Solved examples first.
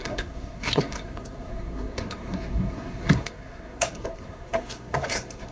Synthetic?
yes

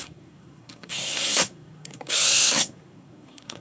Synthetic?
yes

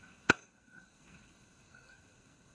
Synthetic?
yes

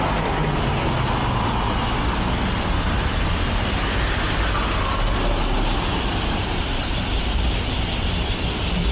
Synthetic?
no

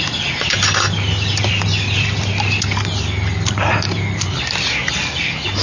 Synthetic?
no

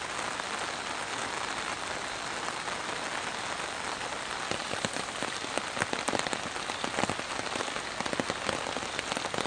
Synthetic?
no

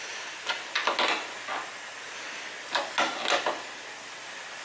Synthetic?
no